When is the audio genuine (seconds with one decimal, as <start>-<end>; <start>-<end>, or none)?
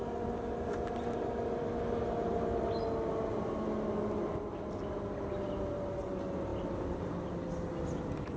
0.0-8.4